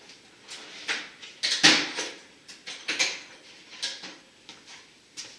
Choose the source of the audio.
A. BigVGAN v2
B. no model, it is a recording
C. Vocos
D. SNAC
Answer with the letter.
B